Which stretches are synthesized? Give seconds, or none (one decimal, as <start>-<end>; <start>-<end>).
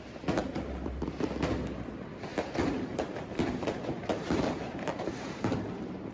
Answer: 0.4-1.2; 2.3-6.1